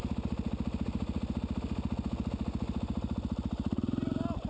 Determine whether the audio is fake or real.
real